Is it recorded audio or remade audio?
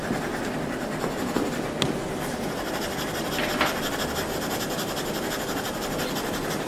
recorded